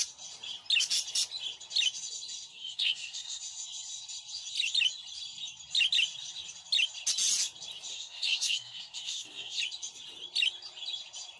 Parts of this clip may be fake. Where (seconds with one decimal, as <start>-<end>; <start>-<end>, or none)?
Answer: 2.5-3.4; 7.9-9.6

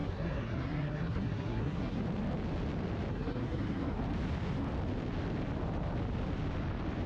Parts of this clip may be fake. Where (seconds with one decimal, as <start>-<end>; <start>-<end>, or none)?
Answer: 0.0-2.0; 3.1-4.0

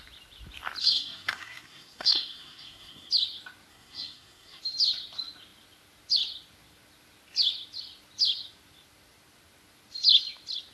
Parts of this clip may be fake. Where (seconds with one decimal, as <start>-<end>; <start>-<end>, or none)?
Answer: 0.8-3.1; 3.7-4.6

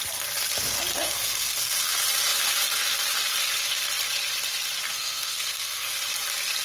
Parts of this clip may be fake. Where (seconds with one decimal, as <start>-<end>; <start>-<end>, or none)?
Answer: 0.9-1.9; 4.9-6.0

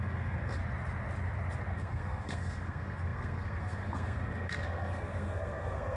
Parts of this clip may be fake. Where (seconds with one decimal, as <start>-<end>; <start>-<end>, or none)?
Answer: 0.0-0.6; 1.7-6.0

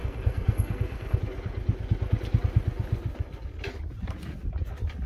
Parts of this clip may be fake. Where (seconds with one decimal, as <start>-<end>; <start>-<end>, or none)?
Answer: 0.0-1.2

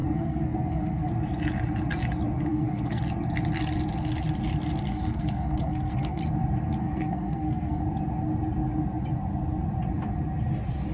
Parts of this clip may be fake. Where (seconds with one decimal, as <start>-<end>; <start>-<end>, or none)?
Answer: 0.0-1.1; 2.5-3.0; 4.9-6.2; 6.8-7.8